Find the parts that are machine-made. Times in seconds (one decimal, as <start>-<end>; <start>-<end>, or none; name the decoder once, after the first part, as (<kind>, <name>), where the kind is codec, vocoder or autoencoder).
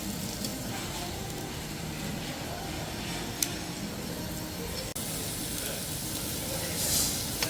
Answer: 0.5-2.1 (vocoder, BigVGAN v2)